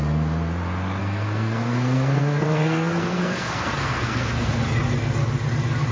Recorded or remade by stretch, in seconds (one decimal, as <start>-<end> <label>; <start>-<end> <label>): 0.0-1.0 recorded; 1.0-4.5 remade; 4.5-5.9 recorded